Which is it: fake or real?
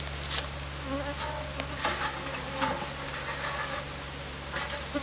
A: real